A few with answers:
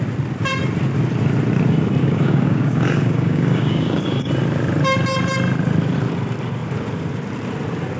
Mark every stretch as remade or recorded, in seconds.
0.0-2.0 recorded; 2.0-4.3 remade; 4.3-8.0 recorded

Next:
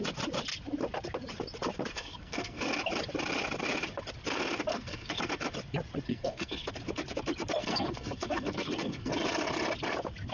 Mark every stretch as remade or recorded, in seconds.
0.0-1.9 recorded; 1.9-2.7 remade; 2.7-4.7 recorded; 4.7-5.3 remade; 5.3-6.1 recorded; 6.1-6.7 remade; 6.7-7.6 recorded; 7.6-9.1 remade; 9.1-10.3 recorded

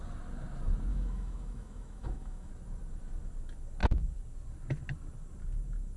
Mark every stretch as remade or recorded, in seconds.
0.0-0.9 recorded; 0.9-2.5 remade; 2.5-6.0 recorded

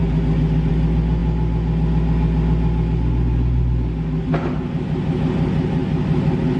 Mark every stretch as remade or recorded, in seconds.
0.0-6.6 recorded

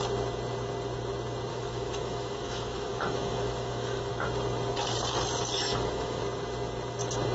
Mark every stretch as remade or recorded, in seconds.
0.0-1.5 recorded; 1.5-4.1 remade; 4.1-5.7 recorded; 5.7-6.2 remade; 6.2-7.3 recorded